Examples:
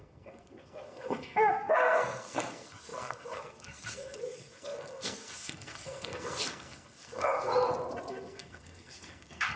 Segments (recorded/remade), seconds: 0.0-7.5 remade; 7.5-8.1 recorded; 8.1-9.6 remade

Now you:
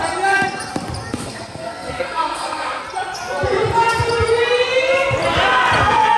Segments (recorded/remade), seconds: 0.0-1.1 recorded; 1.1-2.8 remade; 2.8-6.2 recorded

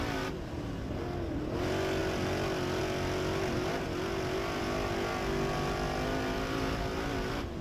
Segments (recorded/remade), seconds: 0.0-7.6 recorded

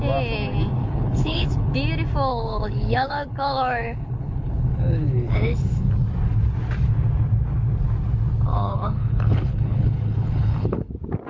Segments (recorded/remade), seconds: 0.0-0.8 recorded; 0.8-1.7 remade; 1.7-2.3 recorded; 2.3-5.9 remade; 5.9-8.5 recorded; 8.5-10.9 remade; 10.9-11.3 recorded